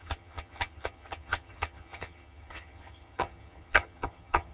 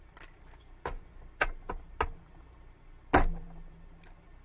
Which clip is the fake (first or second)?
first